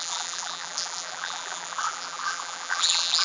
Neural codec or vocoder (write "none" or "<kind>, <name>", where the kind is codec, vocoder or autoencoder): vocoder, BigVGAN v2